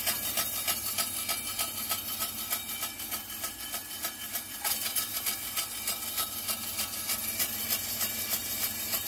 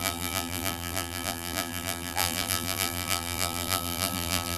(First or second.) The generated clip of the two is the second